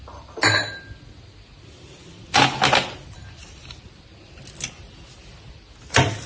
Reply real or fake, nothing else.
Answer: real